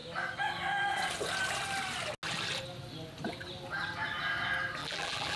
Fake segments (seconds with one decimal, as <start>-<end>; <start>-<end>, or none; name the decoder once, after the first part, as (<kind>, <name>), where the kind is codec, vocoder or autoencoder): 4.8-5.4 (vocoder, BigVGAN v2)